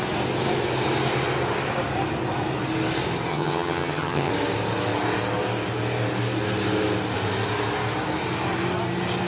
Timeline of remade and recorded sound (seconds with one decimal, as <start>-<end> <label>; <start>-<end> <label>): 0.0-3.3 recorded; 3.3-4.3 remade; 4.3-9.3 recorded